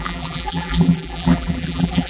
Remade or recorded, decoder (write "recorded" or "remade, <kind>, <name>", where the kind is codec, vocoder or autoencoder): remade, vocoder, BigVGAN v2